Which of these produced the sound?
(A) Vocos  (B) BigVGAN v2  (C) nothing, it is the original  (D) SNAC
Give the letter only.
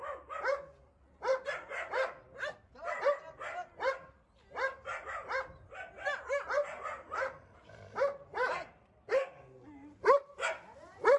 C